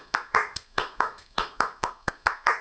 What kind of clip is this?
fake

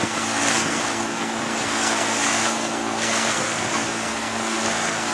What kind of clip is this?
fake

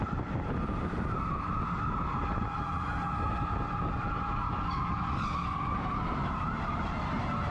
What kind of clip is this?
real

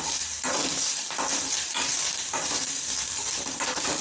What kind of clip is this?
fake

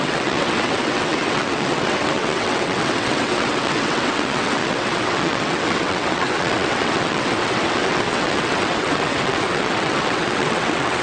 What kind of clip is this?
fake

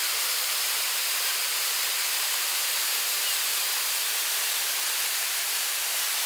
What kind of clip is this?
fake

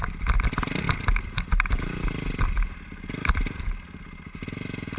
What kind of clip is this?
real